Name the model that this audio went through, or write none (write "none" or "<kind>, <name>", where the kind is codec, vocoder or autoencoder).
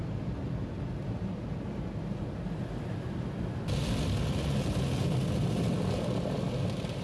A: none